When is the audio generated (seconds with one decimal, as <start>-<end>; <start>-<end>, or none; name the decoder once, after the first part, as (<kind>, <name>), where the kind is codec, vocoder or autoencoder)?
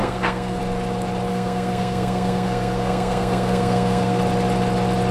0.0-0.6 (codec, SNAC); 1.3-4.2